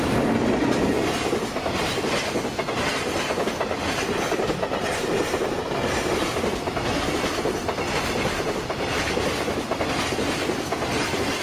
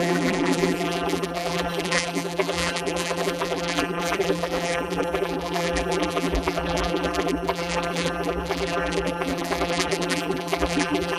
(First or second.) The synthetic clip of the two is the second